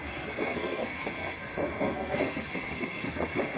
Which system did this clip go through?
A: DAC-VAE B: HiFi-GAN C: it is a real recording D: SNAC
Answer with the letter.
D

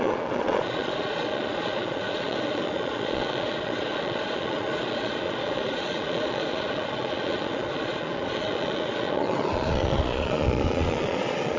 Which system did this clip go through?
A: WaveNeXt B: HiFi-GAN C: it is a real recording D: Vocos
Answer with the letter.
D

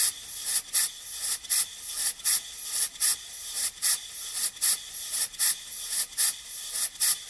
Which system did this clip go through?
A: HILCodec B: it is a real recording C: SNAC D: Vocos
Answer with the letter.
B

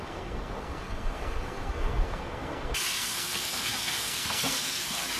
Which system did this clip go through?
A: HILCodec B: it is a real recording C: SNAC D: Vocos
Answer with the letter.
C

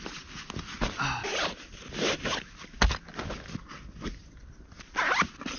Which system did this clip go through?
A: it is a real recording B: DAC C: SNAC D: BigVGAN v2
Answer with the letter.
A